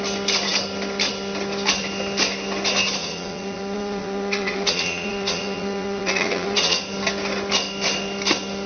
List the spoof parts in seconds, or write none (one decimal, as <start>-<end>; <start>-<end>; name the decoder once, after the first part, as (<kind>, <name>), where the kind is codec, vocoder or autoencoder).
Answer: 3.0-6.8 (vocoder, Vocos)